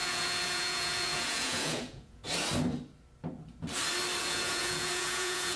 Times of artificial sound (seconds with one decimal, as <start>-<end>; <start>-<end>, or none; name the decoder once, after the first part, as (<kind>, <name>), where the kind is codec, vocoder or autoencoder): 0.0-2.2 (vocoder, Vocos); 4.2-5.6